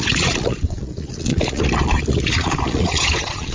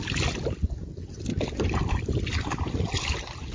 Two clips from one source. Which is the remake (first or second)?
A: first